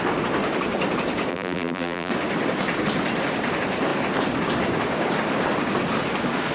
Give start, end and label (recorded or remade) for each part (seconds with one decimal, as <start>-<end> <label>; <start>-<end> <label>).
0.0-1.3 recorded; 1.3-2.1 remade; 2.1-6.5 recorded